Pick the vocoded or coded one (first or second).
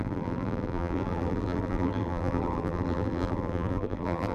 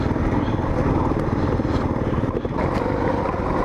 first